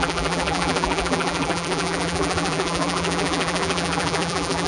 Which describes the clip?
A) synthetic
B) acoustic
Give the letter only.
A